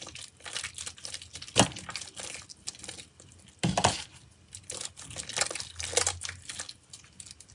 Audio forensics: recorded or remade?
recorded